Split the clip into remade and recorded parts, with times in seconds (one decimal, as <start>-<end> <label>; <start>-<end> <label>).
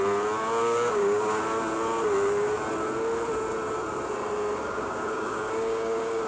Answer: 0.0-0.6 recorded; 0.6-1.4 remade; 1.4-4.6 recorded; 4.6-6.3 remade